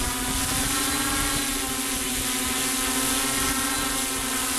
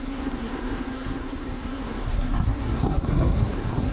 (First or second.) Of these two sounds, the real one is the first